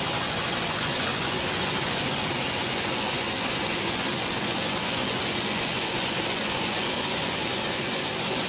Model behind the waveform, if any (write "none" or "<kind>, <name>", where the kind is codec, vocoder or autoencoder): vocoder, Vocos